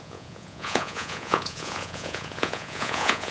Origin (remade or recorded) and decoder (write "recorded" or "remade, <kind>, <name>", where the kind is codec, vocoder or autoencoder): remade, vocoder, Vocos